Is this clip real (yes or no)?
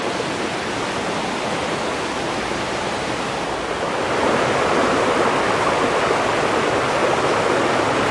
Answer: yes